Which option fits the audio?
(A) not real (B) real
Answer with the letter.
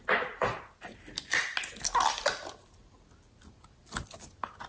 B